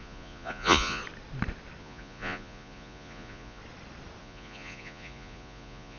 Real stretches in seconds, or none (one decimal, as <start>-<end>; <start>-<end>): 1.0-1.8; 3.6-4.2

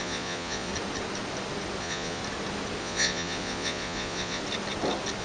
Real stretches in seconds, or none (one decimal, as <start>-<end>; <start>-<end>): 0.7-1.8; 2.2-2.8; 4.4-5.2

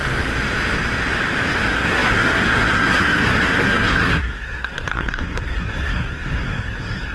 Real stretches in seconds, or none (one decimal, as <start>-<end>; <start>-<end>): 0.0-1.6

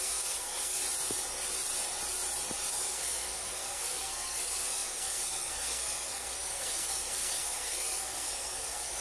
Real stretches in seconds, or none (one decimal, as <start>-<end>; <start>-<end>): 0.8-2.7

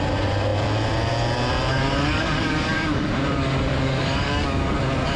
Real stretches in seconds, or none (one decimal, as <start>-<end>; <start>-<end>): 0.0-1.7; 4.8-5.2

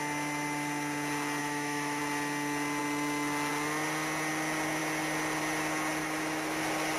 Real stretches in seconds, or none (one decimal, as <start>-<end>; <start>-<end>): 0.0-1.4; 2.0-6.0; 6.6-7.0